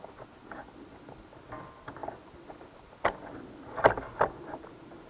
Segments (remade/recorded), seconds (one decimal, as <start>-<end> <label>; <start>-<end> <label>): 0.0-5.1 recorded